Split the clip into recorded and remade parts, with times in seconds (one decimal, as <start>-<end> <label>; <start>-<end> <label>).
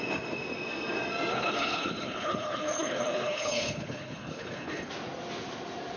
0.0-1.3 recorded; 1.3-4.9 remade; 4.9-6.0 recorded